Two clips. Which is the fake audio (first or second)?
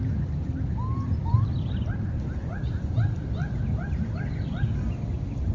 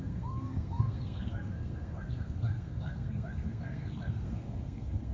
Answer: second